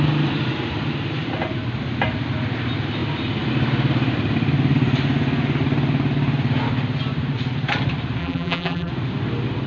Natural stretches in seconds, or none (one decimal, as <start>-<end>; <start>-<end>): 0.0-8.2; 8.9-9.7